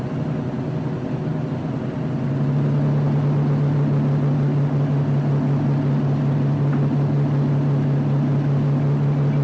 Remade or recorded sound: recorded